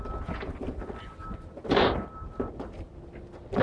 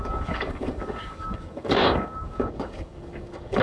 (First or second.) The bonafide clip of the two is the first